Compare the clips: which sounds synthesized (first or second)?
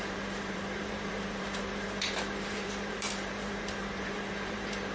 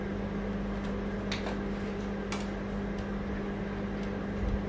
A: first